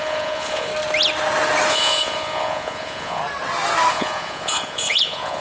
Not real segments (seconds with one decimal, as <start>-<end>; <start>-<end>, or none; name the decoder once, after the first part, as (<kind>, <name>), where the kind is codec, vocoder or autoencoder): 0.0-0.7 (vocoder, Vocos); 1.7-3.2; 3.9-5.4